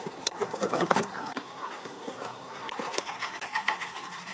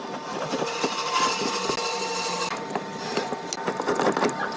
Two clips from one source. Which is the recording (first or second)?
second